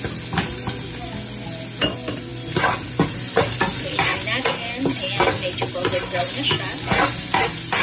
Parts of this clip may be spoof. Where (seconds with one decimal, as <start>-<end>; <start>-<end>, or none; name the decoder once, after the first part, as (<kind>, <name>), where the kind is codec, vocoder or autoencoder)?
none